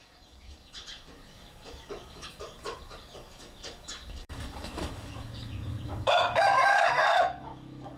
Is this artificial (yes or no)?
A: yes